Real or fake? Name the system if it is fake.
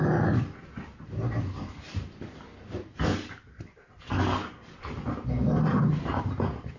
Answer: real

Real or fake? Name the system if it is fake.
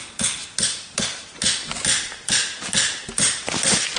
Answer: real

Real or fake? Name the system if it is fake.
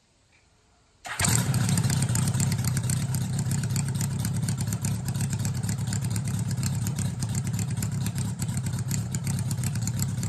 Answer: fake, vocoder, BigVGAN v2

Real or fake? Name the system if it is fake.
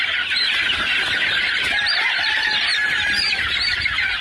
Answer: real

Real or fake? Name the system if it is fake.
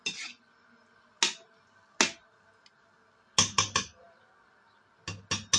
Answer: real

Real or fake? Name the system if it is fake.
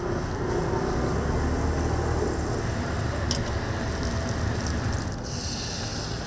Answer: real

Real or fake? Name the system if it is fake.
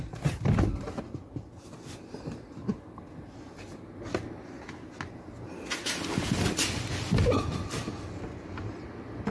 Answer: real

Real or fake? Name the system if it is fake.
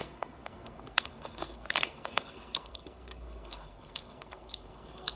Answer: fake, codec, SNAC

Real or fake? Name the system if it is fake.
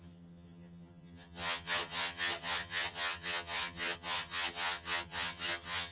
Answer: fake, vocoder, HiFi-GAN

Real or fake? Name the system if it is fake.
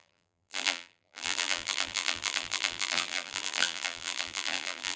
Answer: fake, vocoder, BigVGAN v2